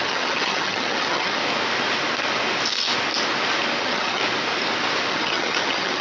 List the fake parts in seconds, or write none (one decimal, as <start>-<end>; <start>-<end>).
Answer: 0.0-1.4; 3.8-4.2; 5.1-6.0